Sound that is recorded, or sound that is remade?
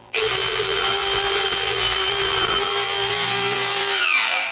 remade